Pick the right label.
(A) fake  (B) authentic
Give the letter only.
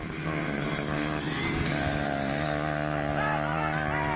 B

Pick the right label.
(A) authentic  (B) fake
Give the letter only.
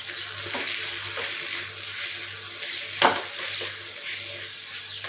B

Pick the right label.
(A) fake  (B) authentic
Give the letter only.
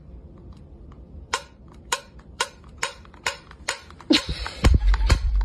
A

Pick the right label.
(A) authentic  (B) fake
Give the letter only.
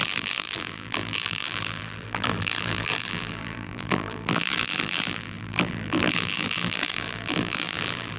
B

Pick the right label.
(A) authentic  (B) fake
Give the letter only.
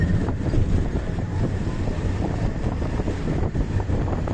B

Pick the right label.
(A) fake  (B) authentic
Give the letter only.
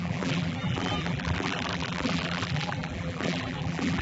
A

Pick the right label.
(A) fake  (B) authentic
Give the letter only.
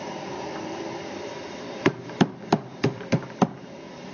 A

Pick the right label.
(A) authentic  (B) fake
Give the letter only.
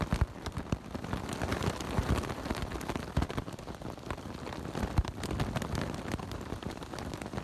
B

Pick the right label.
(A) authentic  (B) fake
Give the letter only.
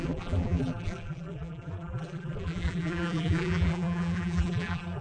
B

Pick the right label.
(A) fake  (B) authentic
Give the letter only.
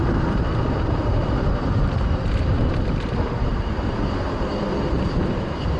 A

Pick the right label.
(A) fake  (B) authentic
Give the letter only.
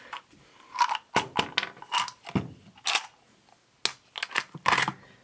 B